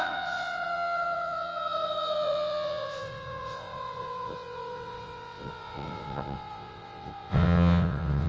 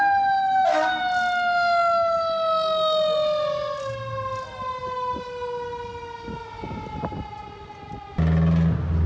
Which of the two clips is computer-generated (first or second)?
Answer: first